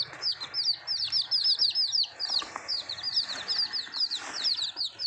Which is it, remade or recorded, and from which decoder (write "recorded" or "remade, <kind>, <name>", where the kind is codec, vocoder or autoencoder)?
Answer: recorded